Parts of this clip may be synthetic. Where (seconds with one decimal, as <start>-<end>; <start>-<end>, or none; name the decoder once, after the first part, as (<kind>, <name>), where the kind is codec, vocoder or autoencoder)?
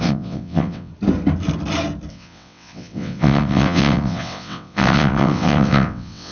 0.0-0.9 (vocoder, WaveNeXt); 2.1-6.3